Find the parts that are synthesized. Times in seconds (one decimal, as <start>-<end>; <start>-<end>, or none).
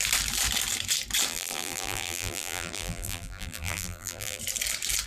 1.3-4.4